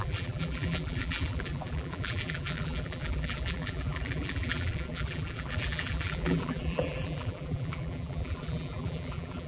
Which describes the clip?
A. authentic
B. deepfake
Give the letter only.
B